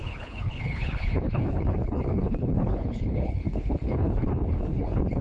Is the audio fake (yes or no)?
yes